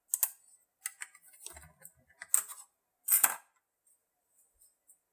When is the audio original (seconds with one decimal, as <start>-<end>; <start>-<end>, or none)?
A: 0.0-5.1